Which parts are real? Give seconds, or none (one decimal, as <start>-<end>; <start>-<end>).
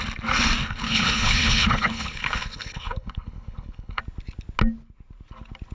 0.0-0.6; 4.0-5.7